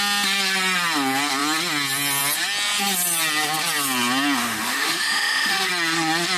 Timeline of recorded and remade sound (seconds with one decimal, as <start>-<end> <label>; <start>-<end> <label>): 0.0-4.4 recorded; 4.4-5.7 remade; 5.7-6.4 recorded